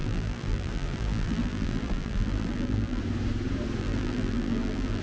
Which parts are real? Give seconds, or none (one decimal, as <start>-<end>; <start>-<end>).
3.0-3.8